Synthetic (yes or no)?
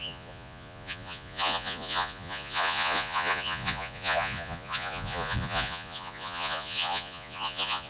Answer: yes